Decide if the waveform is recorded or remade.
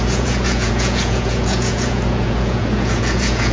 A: remade